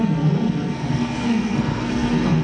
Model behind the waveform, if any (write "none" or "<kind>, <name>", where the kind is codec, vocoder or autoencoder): codec, SNAC